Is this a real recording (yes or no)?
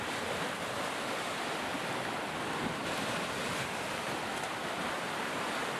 no